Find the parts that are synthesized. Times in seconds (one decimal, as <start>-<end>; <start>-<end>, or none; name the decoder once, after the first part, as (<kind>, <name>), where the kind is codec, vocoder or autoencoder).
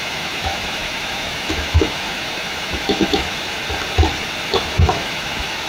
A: 0.0-3.6 (autoencoder, DAC-VAE); 4.5-5.7